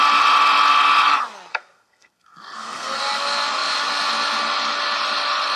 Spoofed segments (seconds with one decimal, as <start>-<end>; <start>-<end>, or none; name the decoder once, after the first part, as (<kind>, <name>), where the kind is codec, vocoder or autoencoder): 1.5-3.0 (codec, SNAC)